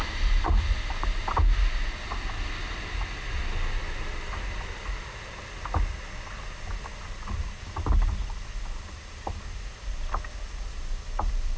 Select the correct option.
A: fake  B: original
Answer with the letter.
B